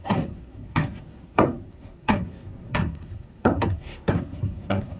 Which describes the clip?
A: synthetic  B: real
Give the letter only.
A